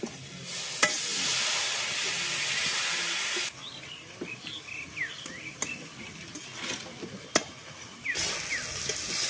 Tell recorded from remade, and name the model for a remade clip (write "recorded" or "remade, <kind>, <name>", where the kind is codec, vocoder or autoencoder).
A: recorded